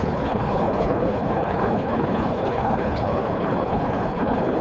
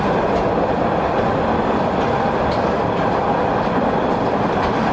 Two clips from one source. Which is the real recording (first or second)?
second